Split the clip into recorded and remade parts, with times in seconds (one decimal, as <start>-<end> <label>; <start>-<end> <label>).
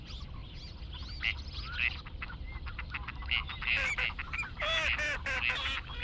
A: 0.0-6.0 recorded